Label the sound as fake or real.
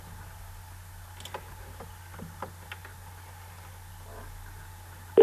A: real